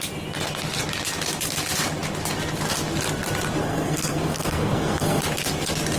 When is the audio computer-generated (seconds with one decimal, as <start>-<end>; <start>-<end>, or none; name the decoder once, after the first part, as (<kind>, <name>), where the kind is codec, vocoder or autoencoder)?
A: 3.6-5.2 (codec, SNAC)